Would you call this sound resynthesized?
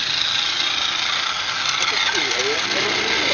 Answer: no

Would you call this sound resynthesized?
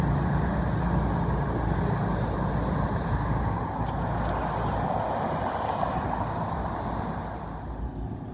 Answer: no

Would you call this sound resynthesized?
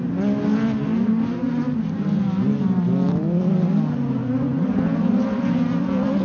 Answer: no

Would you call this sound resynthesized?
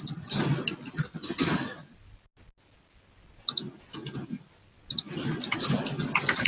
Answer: no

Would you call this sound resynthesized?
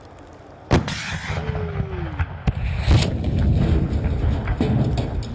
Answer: no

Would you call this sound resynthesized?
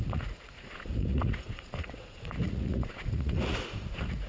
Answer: yes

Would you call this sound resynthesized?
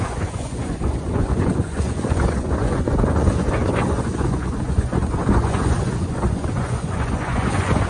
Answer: yes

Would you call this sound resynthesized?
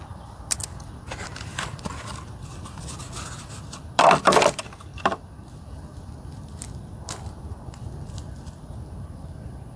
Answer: yes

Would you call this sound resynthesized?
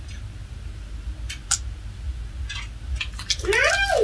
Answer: no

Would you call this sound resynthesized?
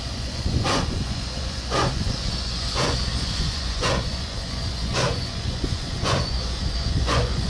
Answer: yes